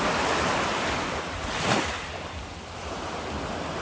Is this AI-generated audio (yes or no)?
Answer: no